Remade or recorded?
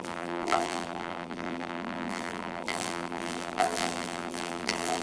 remade